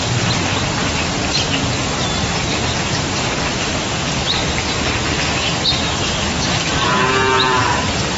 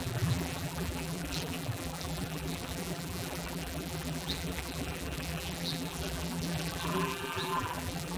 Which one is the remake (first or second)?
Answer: second